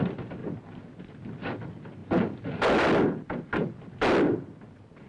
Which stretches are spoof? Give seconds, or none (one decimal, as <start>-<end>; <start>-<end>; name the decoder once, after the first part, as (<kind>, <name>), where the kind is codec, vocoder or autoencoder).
none